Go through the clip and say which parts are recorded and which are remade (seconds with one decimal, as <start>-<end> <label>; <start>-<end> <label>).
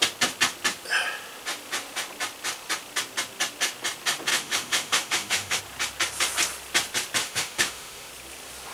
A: 0.0-4.3 recorded; 4.3-5.6 remade; 5.6-7.2 recorded; 7.2-8.1 remade; 8.1-8.7 recorded